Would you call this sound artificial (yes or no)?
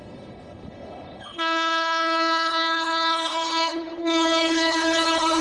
yes